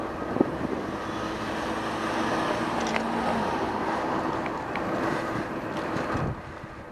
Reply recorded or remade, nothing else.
recorded